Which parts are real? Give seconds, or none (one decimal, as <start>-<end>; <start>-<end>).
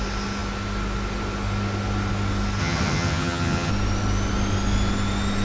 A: 0.0-2.6; 3.7-5.4